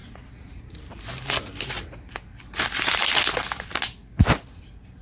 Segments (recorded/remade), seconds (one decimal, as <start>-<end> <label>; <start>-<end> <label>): 0.0-5.0 recorded